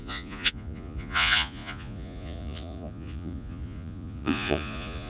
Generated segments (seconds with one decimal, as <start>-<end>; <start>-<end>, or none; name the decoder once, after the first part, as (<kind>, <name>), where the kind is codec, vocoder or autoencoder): 0.0-5.1 (vocoder, Vocos)